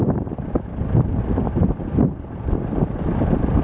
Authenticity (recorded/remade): remade